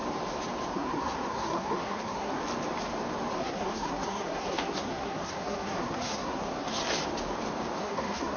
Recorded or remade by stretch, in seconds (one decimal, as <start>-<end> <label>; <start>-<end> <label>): 0.0-0.7 recorded; 0.7-2.4 remade; 2.4-3.4 recorded; 3.4-6.8 remade; 6.8-7.8 recorded; 7.8-8.4 remade